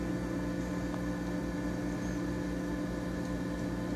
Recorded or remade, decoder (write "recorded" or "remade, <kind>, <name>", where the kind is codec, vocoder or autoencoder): recorded